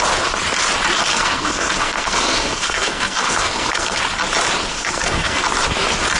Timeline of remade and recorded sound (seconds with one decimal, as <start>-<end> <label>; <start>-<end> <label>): 0.0-1.1 recorded; 1.1-4.0 remade; 4.0-4.7 recorded; 4.7-5.4 remade; 5.4-6.2 recorded